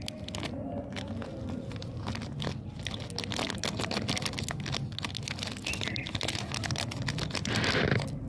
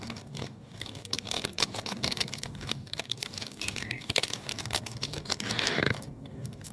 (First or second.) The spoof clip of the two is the second